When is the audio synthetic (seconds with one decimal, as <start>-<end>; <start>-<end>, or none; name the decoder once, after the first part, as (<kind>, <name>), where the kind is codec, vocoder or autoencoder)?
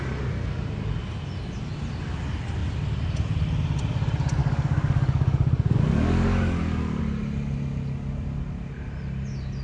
4.4-7.0 (codec, DAC)